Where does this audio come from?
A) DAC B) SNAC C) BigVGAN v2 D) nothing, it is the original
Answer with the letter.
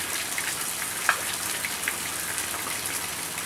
D